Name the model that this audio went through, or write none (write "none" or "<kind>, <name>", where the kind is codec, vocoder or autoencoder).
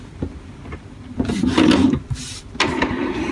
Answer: vocoder, BigVGAN v2